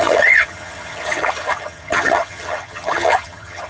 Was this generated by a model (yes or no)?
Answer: yes